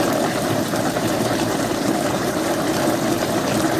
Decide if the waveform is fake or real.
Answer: fake